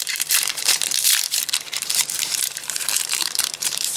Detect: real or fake fake